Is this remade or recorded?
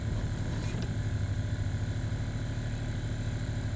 remade